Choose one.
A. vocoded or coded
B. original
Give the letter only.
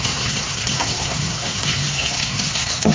A